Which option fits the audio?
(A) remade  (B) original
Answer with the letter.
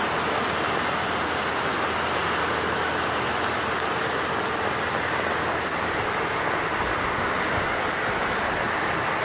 B